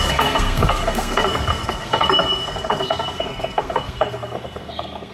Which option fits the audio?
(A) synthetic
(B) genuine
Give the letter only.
A